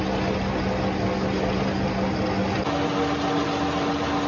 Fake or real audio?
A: real